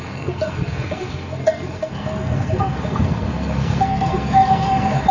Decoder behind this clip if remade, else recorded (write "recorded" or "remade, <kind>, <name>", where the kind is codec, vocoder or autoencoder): remade, codec, SNAC